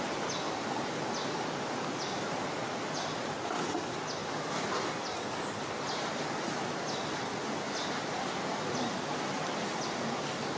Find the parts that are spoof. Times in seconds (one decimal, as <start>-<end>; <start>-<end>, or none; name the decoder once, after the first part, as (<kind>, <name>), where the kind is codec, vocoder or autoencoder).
4.2-4.8 (vocoder, BigVGAN v2); 8.5-9.3